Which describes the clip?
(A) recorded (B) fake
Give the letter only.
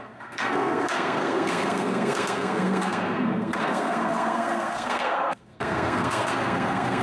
B